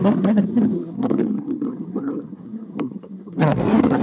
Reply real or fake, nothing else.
fake